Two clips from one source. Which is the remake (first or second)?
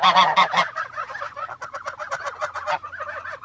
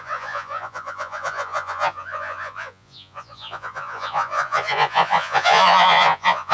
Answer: second